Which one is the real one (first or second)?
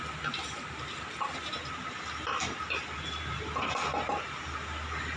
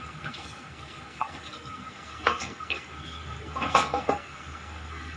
first